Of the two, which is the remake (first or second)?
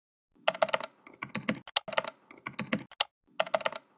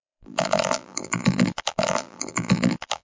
second